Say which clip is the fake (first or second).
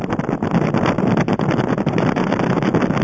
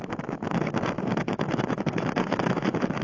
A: second